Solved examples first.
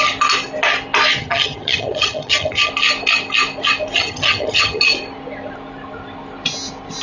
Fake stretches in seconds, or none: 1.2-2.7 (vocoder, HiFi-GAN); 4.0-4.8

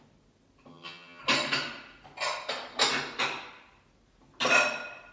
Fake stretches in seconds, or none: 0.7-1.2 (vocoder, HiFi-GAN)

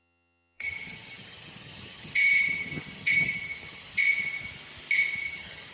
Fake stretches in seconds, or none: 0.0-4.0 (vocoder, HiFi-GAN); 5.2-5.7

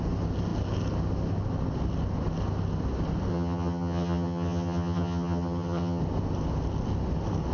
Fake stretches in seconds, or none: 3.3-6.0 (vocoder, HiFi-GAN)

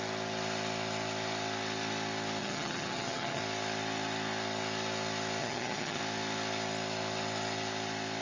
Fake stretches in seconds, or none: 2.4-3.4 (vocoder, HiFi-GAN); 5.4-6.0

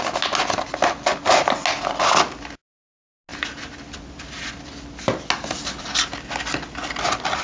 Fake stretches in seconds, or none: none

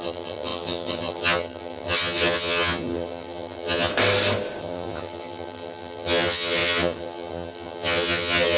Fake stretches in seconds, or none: 0.0-3.9 (vocoder, HiFi-GAN); 4.6-8.6

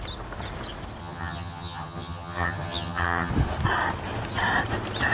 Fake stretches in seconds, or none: 1.0-3.3 (vocoder, HiFi-GAN)